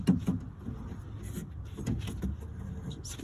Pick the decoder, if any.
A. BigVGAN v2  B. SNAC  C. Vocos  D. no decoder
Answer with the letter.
D